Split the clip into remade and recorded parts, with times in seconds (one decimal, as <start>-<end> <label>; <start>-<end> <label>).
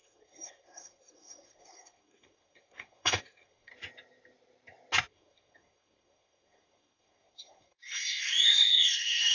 0.0-3.7 remade; 3.7-5.0 recorded; 5.0-9.3 remade